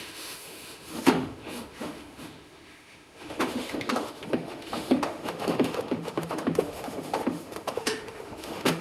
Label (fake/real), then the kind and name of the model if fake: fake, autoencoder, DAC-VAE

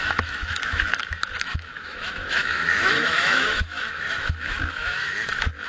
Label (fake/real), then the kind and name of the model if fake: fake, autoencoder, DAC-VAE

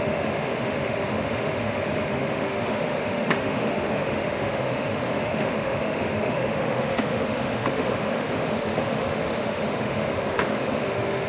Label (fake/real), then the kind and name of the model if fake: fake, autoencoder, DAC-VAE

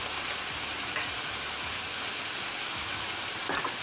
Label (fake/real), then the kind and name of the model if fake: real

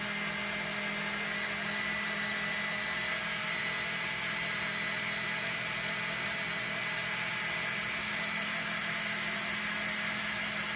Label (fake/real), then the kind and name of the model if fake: real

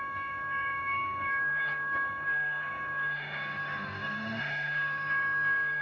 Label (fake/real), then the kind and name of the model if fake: fake, autoencoder, DAC-VAE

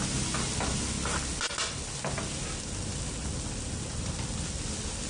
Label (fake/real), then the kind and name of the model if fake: real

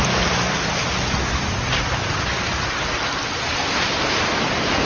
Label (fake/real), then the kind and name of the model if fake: real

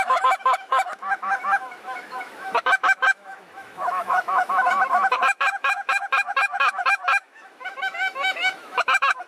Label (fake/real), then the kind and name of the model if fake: fake, autoencoder, DAC-VAE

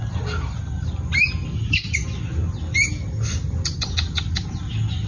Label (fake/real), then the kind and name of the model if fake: real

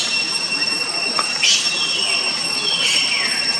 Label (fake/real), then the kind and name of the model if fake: real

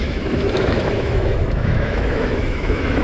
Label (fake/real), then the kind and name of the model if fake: fake, autoencoder, DAC-VAE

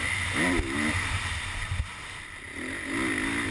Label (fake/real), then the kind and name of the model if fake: real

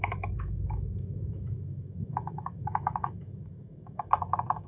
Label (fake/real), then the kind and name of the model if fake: fake, autoencoder, DAC-VAE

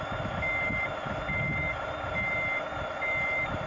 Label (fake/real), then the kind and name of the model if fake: real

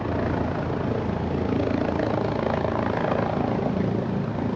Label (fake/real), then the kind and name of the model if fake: real